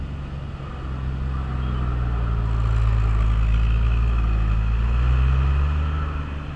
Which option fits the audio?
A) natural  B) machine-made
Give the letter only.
A